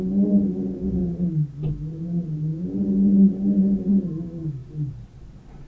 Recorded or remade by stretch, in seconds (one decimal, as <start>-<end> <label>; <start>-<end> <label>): 0.0-4.6 recorded; 4.6-5.7 remade